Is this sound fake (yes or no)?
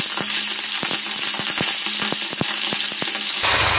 no